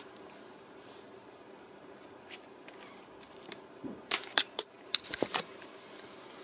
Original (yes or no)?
no